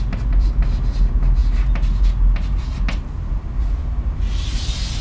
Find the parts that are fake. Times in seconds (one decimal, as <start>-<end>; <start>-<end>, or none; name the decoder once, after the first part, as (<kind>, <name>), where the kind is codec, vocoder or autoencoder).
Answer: none